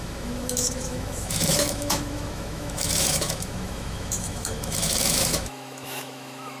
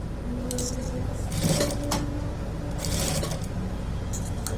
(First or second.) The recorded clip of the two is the second